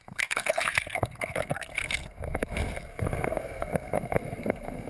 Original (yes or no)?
no